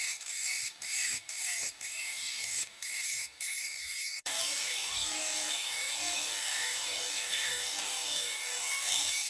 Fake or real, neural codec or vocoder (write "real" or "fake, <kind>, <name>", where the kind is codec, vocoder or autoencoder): fake, codec, DAC